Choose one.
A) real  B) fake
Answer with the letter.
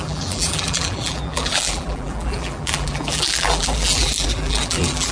B